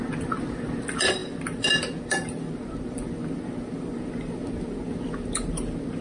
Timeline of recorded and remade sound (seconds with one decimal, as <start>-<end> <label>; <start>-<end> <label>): 0.0-6.0 recorded